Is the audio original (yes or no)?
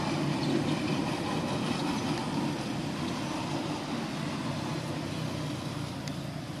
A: yes